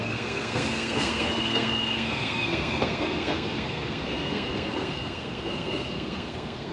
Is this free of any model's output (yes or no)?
no